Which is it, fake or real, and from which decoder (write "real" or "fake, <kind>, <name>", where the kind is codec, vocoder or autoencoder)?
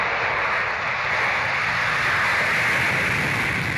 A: real